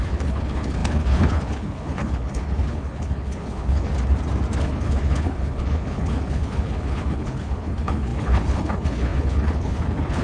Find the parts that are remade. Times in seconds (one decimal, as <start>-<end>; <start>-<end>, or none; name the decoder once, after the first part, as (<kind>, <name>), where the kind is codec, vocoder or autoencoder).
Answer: 0.0-3.9 (codec, HILCodec); 4.6-10.2

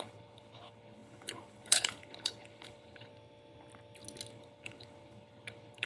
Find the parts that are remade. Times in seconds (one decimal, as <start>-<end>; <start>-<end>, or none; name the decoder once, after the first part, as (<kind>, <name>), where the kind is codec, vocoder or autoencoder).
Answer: 0.0-3.1 (codec, HILCodec); 4.3-5.9

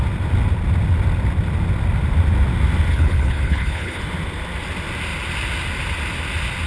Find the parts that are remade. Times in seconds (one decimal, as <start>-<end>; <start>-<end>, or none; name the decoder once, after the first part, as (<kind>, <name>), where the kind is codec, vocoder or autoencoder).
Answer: 2.9-4.0 (codec, HILCodec)

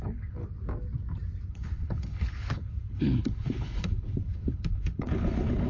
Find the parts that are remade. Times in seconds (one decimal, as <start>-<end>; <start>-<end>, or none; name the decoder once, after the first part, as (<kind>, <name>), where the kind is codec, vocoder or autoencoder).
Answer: 0.0-0.4 (codec, HILCodec); 1.5-5.7

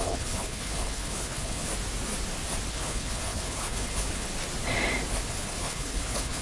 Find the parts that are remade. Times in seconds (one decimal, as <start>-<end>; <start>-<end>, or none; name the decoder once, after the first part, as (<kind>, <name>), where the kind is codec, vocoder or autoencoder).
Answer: 0.0-1.7 (codec, HILCodec); 2.7-4.3; 5.3-6.4

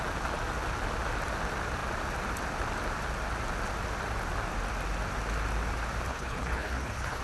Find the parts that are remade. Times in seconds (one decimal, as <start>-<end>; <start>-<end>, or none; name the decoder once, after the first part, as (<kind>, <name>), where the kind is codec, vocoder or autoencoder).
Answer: 6.1-7.2 (codec, HILCodec)

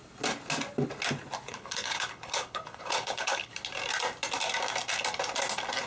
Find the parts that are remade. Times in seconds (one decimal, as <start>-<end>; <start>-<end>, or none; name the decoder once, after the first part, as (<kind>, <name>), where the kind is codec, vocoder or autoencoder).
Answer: 1.5-3.5 (codec, HILCodec)